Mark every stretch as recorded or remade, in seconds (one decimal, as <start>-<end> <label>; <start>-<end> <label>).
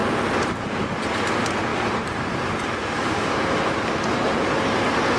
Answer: 0.0-5.2 recorded